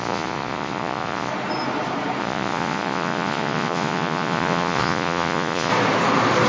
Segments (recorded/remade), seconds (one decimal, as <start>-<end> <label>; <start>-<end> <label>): 0.0-1.3 remade; 1.3-2.2 recorded; 2.2-5.7 remade; 5.7-6.5 recorded